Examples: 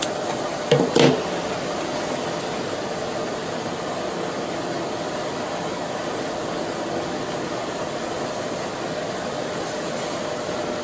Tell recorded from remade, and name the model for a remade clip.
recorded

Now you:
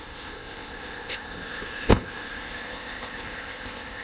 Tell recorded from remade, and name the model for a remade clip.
remade, codec, ZipCodec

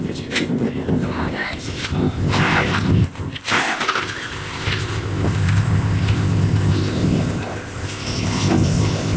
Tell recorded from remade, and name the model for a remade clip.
remade, codec, ZipCodec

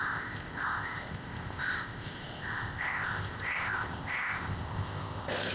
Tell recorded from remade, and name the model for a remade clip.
remade, codec, ZipCodec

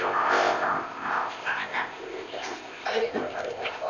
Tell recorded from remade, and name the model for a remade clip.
remade, codec, ZipCodec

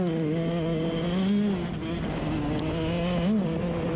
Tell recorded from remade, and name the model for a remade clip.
recorded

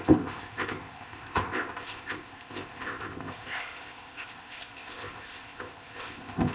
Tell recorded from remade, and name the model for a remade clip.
remade, codec, ZipCodec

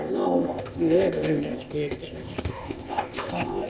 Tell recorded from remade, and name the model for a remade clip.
remade, codec, ZipCodec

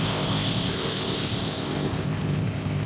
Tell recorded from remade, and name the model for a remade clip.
remade, codec, ZipCodec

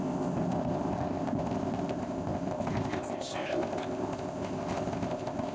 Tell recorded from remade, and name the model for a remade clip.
remade, codec, ZipCodec